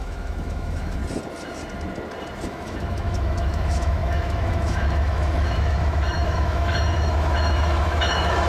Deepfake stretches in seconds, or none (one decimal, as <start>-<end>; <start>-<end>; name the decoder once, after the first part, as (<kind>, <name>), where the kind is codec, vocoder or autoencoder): 0.0-1.0 (autoencoder, DAC-VAE); 2.5-8.5